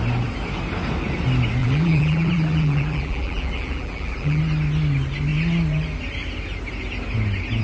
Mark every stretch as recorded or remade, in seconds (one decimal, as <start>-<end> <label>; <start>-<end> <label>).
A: 0.0-1.6 recorded; 1.6-4.4 remade; 4.4-7.6 recorded